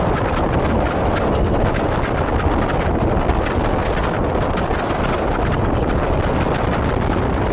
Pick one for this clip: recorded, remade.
recorded